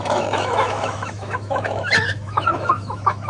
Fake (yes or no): yes